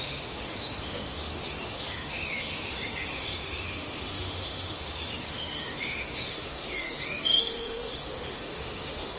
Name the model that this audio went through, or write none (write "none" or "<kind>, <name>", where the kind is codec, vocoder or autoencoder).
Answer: autoencoder, DAC-VAE